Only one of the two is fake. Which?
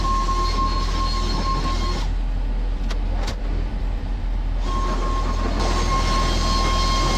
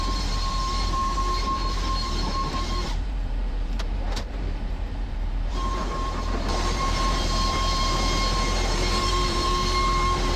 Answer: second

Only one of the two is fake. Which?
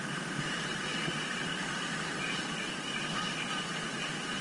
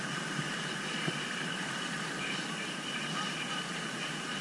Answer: second